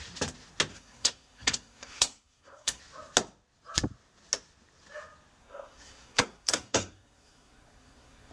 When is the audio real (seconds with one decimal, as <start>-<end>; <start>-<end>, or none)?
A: 0.0-0.7; 2.8-5.4